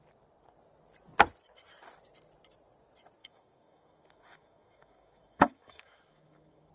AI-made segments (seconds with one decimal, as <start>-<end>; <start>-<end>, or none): 3.2-6.7